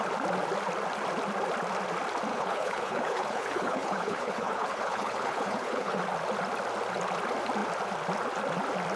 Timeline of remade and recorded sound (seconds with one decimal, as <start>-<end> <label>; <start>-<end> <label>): 0.0-2.3 recorded; 2.3-6.0 remade; 6.0-9.0 recorded